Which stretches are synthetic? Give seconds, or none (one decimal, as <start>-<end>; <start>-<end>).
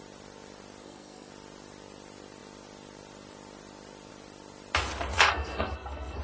0.8-1.3; 5.1-6.2